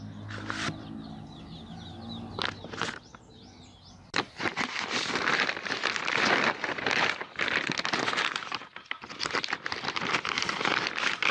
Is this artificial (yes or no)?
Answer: no